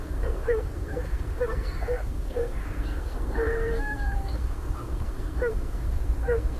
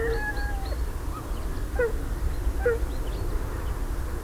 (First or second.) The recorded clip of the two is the second